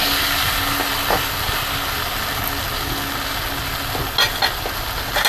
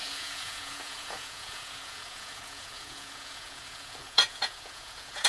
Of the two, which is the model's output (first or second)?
second